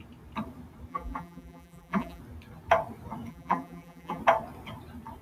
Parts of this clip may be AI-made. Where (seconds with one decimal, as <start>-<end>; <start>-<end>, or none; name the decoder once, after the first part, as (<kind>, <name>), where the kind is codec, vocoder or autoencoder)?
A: 0.9-2.2 (vocoder, BigVGAN v2); 3.3-4.2